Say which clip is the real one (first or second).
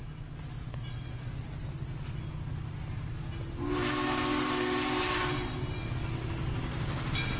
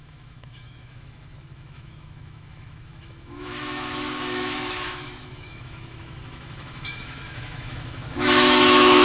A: first